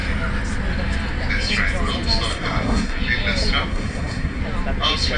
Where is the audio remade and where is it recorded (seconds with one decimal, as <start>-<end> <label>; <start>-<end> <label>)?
0.0-2.3 recorded; 2.3-3.0 remade; 3.0-3.7 recorded; 3.7-4.4 remade; 4.4-5.2 recorded

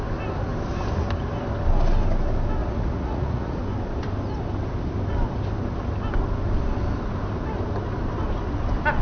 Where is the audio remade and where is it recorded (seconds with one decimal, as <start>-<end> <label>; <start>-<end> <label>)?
0.0-2.6 recorded; 2.6-3.6 remade; 3.6-9.0 recorded

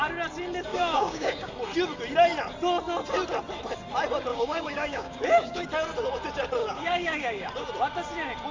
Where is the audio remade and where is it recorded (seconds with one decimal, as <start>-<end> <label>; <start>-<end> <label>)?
0.0-0.7 recorded; 0.7-1.5 remade; 1.5-4.3 recorded; 4.3-5.6 remade; 5.6-6.6 recorded; 6.6-7.5 remade; 7.5-8.5 recorded

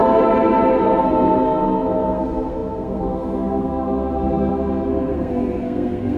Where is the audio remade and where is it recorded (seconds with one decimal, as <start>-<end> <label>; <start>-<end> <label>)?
0.0-1.0 recorded; 1.0-6.2 remade